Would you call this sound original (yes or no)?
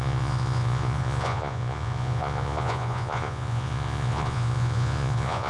no